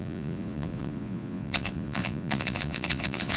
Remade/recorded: remade